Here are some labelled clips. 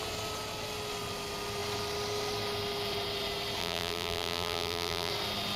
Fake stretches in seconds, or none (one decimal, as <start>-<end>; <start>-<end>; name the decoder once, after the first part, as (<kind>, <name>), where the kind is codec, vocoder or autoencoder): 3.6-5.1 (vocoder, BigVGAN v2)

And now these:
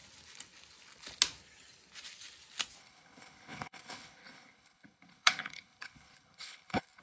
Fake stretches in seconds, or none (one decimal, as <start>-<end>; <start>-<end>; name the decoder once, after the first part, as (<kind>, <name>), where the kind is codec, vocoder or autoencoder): 2.8-7.0 (codec, HILCodec)

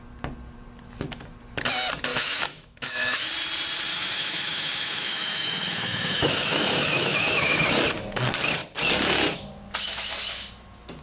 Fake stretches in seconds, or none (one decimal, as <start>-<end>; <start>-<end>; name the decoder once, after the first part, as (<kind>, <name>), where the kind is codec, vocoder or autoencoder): 2.1-3.3 (autoencoder, DAC-VAE); 3.9-7.7